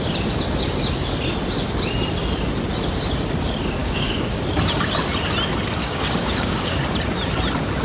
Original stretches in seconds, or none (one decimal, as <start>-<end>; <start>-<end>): 0.0-3.8; 4.4-5.8; 6.8-7.8

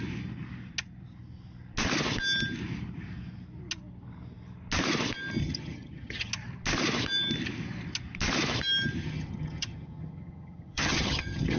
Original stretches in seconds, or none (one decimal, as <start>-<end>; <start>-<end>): 0.0-5.4; 6.3-9.0

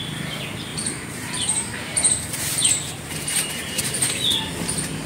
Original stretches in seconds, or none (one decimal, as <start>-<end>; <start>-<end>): 0.0-0.7; 3.8-5.1

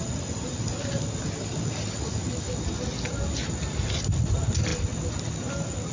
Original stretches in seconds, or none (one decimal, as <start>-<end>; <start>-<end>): 0.0-5.9